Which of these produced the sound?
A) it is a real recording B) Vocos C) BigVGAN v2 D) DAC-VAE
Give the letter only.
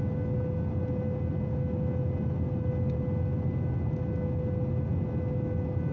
A